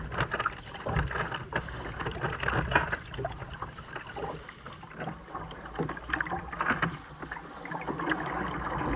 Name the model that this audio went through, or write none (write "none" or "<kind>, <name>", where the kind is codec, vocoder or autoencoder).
none